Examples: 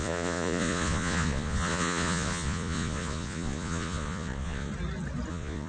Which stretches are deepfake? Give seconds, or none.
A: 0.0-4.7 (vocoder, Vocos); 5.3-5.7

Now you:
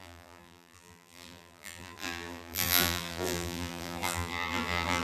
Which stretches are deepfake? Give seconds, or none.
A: 0.0-5.0 (vocoder, BigVGAN v2)

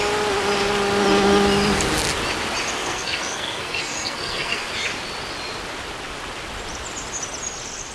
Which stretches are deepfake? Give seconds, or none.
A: 2.8-4.7 (codec, SNAC)

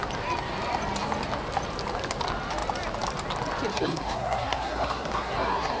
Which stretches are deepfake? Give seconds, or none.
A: 3.7-5.8 (codec, SNAC)